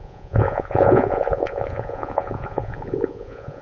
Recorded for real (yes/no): no